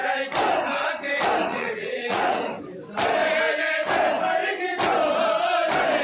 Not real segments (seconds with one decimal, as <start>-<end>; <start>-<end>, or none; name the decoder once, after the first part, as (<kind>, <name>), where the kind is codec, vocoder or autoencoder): 1.5-2.4 (vocoder, Vocos)